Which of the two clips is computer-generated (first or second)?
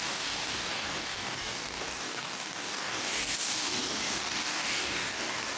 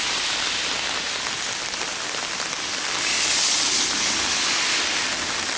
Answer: first